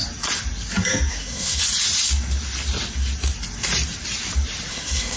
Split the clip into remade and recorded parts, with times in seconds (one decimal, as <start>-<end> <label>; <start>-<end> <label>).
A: 0.0-1.1 recorded; 1.1-1.6 remade; 1.6-4.7 recorded; 4.7-5.2 remade